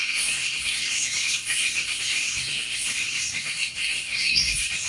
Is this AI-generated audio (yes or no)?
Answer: yes